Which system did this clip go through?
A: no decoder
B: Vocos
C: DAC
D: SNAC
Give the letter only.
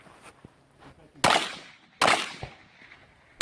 A